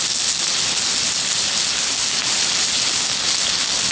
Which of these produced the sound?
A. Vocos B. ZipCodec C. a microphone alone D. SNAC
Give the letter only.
C